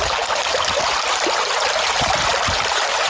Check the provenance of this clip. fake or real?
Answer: real